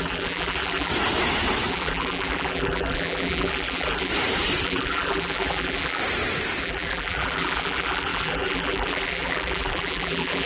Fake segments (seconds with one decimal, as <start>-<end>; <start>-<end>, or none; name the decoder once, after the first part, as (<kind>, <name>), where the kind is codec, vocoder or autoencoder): 0.0-0.9 (vocoder, BigVGAN v2); 1.7-4.1; 4.6-6.0; 6.6-10.5